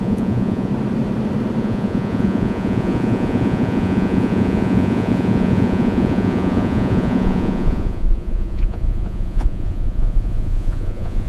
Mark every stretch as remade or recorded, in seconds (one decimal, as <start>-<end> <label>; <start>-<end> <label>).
0.0-0.7 remade; 0.7-1.6 recorded; 1.6-11.3 remade